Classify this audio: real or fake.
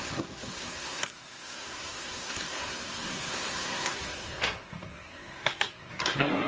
fake